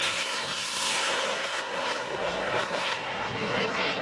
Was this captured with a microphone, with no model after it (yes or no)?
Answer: no